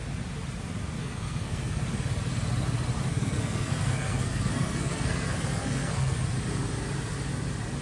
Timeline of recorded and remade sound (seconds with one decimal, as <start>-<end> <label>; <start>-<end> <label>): 0.0-1.0 recorded; 1.0-1.8 remade; 1.8-3.1 recorded; 3.1-6.2 remade; 6.2-7.8 recorded